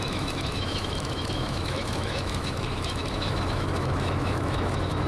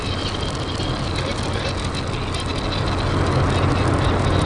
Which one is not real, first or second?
first